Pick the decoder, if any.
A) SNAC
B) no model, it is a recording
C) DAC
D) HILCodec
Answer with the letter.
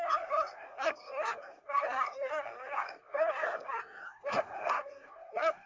A